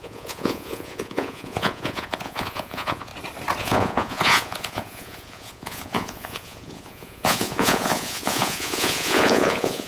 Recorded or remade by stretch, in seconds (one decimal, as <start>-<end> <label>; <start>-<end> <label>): 0.0-3.1 remade; 3.1-3.6 recorded; 3.6-9.9 remade